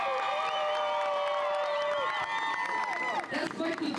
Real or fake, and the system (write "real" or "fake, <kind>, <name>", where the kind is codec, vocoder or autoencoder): real